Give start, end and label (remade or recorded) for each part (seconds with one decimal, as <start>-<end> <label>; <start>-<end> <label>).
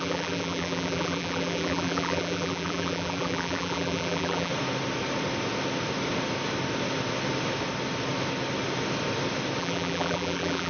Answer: 0.0-4.5 remade; 4.5-9.6 recorded; 9.6-10.7 remade